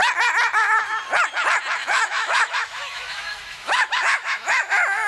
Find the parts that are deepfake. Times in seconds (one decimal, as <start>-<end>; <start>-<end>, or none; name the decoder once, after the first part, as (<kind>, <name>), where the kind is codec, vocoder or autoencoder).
1.8-5.1 (autoencoder, DAC-VAE)